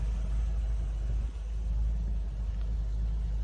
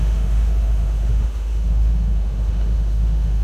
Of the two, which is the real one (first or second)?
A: first